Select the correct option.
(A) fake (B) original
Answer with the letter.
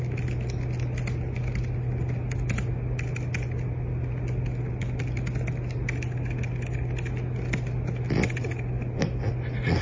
B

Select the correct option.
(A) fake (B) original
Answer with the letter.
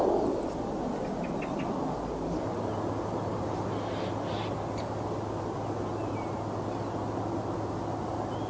B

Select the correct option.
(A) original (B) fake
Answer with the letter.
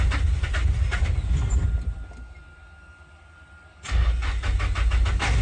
A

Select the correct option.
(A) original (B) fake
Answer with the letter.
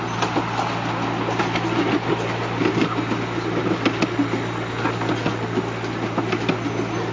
A